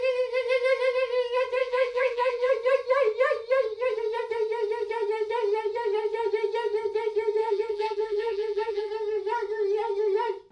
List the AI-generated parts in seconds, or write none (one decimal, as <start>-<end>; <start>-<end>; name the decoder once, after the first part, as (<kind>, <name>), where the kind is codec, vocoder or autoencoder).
1.6-2.5 (vocoder, BigVGAN v2); 7.4-8.9